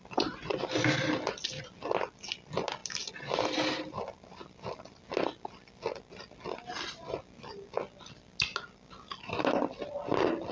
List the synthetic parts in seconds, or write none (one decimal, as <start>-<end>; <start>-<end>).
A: none